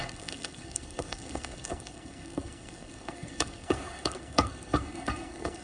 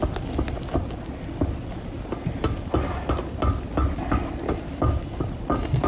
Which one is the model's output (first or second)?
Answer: first